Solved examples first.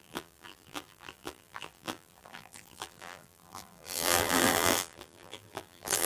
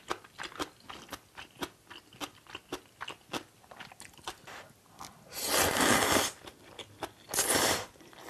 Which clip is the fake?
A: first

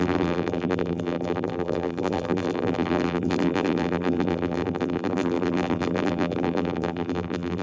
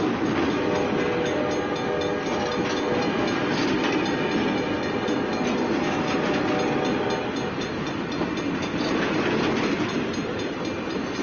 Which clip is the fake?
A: first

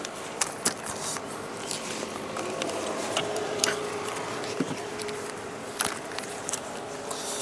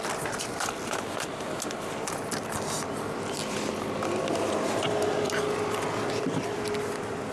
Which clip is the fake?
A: first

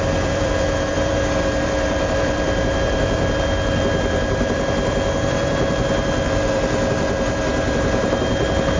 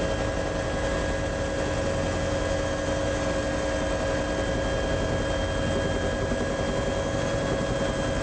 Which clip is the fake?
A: first